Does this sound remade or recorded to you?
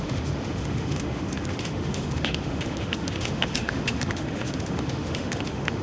remade